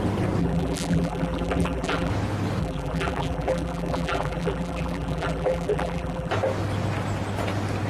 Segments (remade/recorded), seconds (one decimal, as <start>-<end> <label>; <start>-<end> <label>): 0.0-0.4 recorded; 0.4-2.1 remade; 2.1-2.6 recorded; 2.6-6.3 remade; 6.3-7.9 recorded